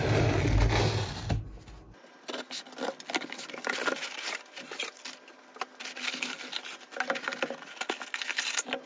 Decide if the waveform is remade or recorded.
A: recorded